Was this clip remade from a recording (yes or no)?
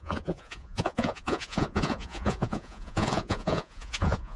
yes